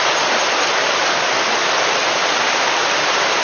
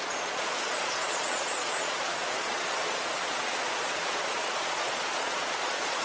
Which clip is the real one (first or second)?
first